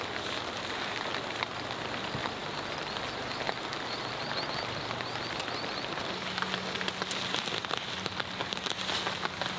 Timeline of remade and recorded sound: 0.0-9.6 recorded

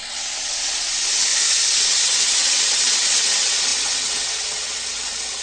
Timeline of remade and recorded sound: 0.0-1.3 remade; 1.3-1.8 recorded; 1.8-5.4 remade

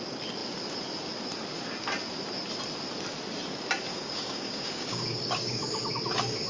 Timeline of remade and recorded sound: 0.0-3.9 recorded; 3.9-5.6 remade; 5.6-6.5 recorded

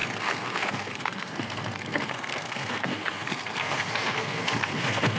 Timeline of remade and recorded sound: 0.0-5.2 remade